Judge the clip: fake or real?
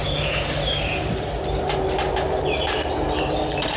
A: real